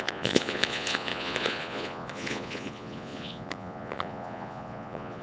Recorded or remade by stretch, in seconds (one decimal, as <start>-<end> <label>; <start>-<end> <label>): 0.0-5.2 remade